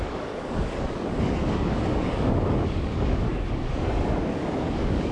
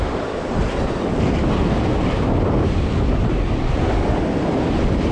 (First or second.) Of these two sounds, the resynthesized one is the first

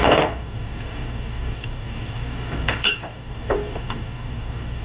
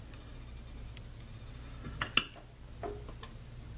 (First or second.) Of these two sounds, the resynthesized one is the first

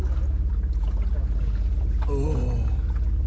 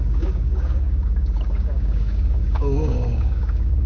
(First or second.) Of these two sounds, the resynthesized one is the second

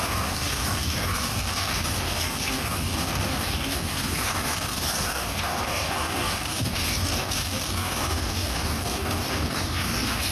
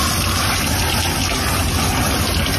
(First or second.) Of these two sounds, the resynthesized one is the first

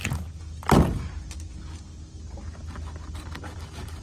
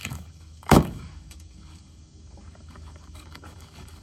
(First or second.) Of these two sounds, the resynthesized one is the second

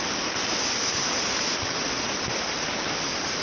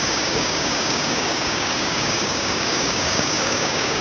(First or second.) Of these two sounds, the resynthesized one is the second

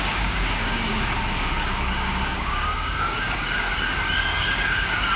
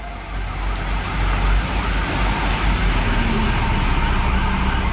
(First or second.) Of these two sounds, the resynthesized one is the first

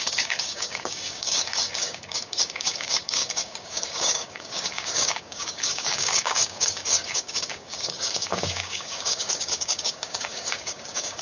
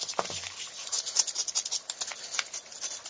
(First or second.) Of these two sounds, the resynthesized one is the first